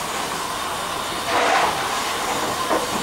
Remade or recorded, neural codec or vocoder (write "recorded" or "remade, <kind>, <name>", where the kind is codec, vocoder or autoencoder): recorded